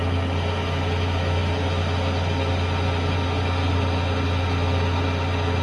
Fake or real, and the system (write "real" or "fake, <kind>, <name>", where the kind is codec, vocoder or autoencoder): real